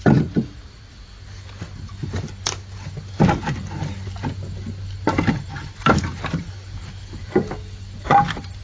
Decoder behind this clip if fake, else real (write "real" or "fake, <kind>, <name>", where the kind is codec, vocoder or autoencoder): real